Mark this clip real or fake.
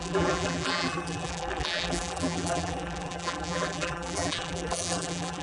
fake